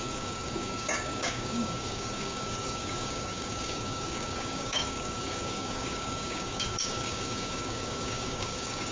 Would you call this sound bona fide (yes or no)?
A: no